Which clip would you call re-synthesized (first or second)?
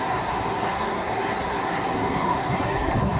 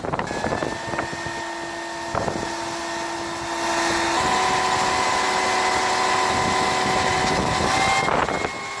first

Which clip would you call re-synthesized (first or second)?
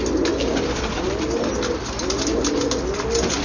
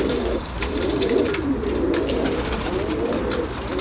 second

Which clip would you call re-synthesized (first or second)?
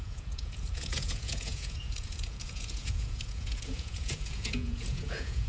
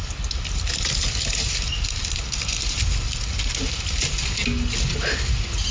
first